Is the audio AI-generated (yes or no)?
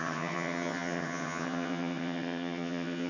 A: yes